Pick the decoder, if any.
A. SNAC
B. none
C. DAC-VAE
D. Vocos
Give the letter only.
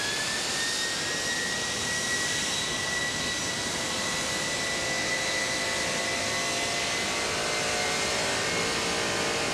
B